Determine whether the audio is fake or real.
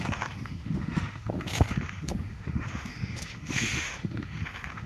fake